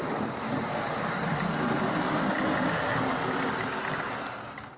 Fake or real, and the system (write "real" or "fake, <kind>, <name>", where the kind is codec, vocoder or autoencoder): real